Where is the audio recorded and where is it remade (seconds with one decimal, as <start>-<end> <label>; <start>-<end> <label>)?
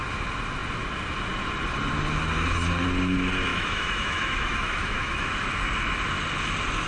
0.0-3.5 recorded; 3.5-5.5 remade; 5.5-6.9 recorded